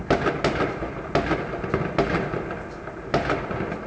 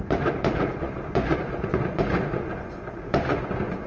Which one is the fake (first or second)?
second